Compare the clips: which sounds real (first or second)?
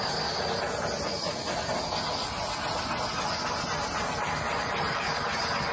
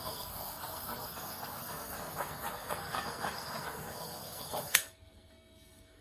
first